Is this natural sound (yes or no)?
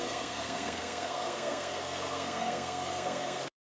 no